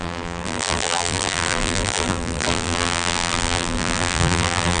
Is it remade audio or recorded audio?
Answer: remade